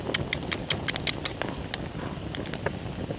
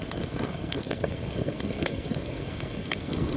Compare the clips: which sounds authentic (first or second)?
first